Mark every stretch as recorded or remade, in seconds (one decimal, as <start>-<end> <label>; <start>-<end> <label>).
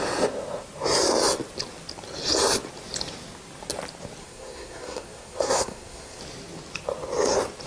0.0-4.2 recorded; 4.2-6.2 remade; 6.2-7.7 recorded